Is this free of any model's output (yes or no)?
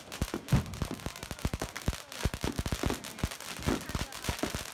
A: yes